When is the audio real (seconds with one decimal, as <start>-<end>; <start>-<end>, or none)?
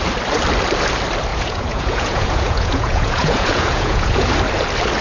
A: 0.0-1.3; 4.3-5.0